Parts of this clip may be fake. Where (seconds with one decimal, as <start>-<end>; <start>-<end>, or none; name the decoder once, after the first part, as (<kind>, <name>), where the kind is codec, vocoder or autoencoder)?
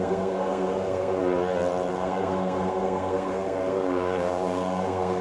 0.0-1.2 (codec, SNAC); 1.9-5.2